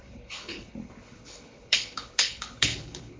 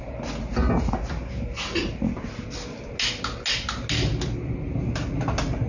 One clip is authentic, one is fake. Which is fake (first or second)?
first